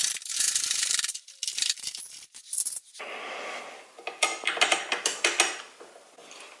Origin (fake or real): real